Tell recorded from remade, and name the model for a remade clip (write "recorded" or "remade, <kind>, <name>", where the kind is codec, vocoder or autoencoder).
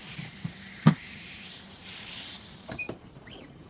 remade, vocoder, BigVGAN v2